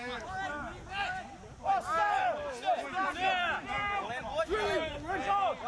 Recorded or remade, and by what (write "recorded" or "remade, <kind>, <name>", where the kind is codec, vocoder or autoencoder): recorded